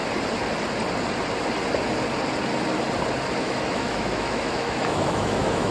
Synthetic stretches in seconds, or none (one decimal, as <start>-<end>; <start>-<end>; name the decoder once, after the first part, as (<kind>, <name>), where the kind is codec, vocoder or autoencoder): 3.4-5.7 (autoencoder, DAC-VAE)